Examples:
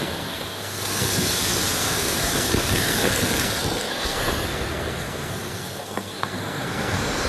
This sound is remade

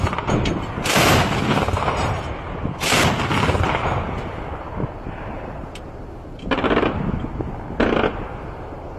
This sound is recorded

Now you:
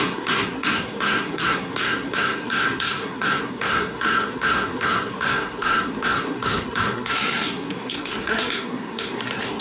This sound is remade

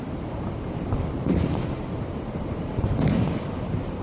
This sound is remade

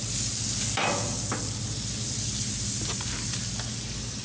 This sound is recorded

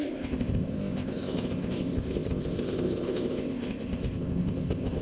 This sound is remade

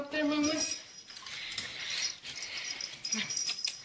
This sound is recorded